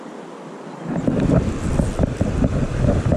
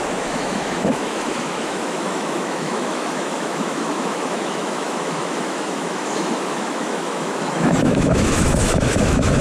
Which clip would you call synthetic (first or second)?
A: second